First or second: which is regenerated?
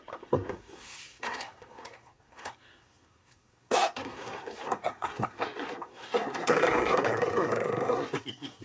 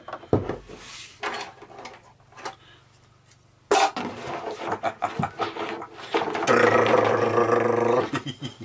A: first